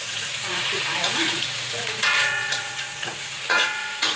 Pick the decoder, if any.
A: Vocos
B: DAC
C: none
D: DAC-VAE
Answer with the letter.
A